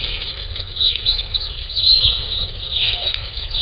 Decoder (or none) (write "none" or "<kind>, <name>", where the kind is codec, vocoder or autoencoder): codec, SNAC